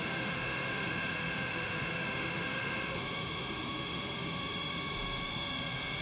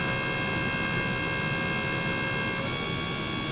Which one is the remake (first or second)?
first